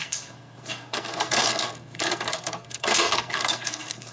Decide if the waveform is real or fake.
fake